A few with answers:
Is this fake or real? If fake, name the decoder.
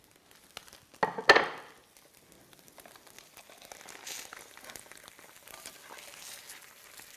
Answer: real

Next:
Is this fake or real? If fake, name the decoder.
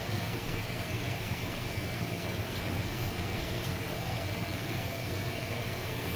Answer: fake, codec, SNAC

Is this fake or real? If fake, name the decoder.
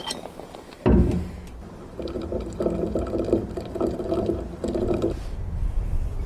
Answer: real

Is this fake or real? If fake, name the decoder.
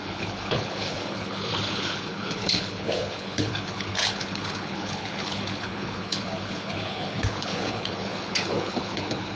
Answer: fake, codec, HILCodec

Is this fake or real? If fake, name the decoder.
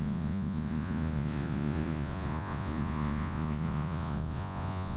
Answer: fake, vocoder, Vocos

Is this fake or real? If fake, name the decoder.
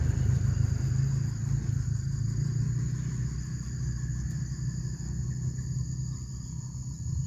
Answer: real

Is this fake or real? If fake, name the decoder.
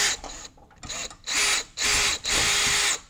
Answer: real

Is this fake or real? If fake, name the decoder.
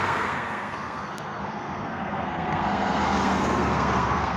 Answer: fake, codec, SNAC